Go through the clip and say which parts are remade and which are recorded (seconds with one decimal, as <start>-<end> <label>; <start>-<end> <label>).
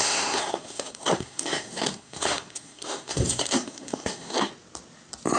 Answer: 0.0-4.5 remade; 4.5-5.4 recorded